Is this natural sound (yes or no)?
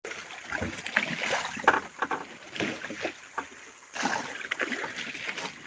yes